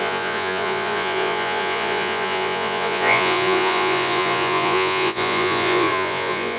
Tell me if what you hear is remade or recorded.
remade